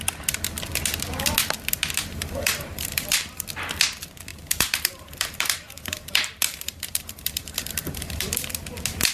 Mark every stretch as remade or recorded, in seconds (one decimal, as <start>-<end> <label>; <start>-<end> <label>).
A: 0.0-2.0 recorded; 2.0-3.5 remade; 3.5-4.3 recorded; 4.3-8.3 remade; 8.3-9.1 recorded